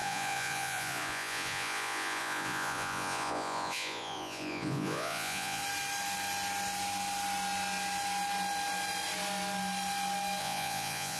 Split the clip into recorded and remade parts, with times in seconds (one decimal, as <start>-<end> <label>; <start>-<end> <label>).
0.0-5.6 remade; 5.6-10.4 recorded; 10.4-11.2 remade